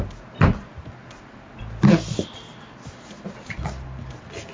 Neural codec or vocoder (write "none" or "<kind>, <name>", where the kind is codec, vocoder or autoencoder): none